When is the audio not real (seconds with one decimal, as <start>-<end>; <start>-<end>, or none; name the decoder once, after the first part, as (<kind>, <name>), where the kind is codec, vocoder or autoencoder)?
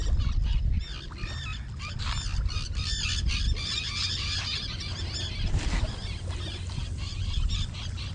0.0-0.8 (vocoder, BigVGAN v2)